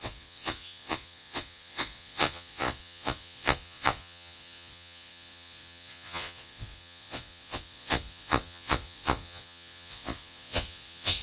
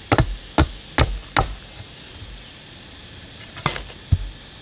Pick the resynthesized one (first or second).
first